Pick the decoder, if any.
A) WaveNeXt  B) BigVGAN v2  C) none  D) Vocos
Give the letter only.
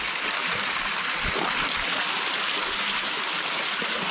C